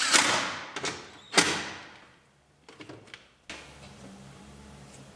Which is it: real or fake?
real